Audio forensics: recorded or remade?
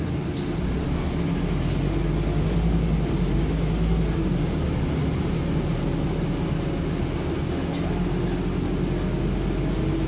recorded